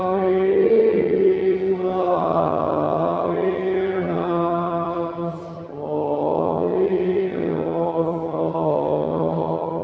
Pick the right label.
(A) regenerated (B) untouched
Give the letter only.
A